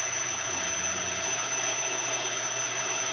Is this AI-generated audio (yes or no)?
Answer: yes